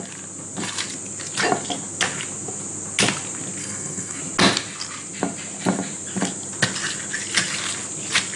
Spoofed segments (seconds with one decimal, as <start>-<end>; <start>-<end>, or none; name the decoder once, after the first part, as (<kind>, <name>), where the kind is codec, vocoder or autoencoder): 3.6-4.2 (codec, SNAC)